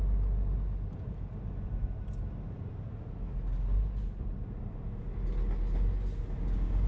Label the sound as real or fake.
real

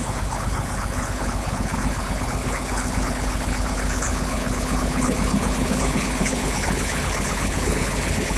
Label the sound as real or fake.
fake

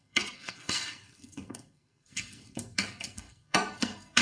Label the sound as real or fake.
fake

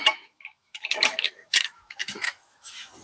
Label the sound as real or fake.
fake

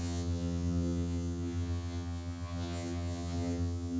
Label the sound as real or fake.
fake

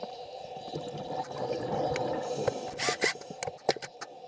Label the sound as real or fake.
real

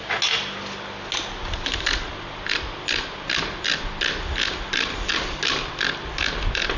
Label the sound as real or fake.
real